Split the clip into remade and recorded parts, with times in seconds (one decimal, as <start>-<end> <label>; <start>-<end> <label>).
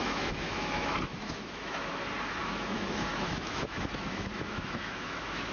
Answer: 0.0-1.9 remade; 1.9-2.4 recorded; 2.4-5.5 remade